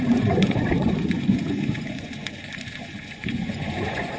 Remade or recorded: remade